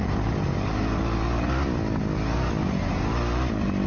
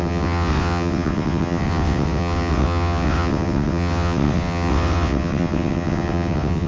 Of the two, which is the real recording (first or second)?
first